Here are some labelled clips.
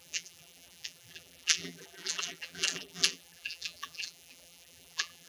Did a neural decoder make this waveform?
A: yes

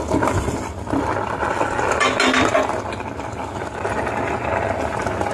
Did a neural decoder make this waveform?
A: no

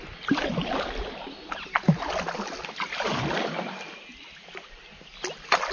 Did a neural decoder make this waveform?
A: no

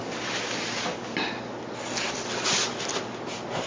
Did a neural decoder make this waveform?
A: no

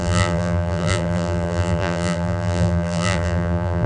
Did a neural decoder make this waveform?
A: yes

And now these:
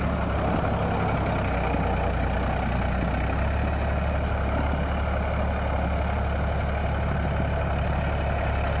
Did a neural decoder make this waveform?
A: no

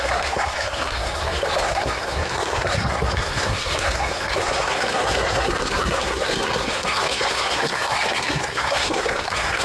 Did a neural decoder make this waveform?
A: yes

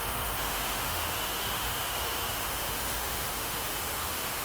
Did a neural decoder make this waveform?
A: yes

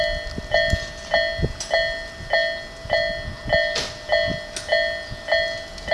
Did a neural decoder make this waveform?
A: no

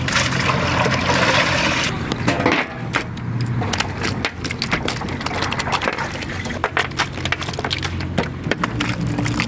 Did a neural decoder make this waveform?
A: no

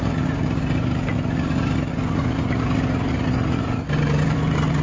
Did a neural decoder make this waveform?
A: no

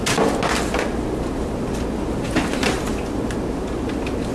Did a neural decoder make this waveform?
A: no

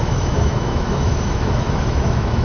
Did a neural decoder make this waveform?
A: yes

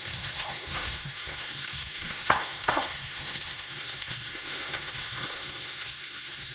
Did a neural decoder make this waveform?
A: yes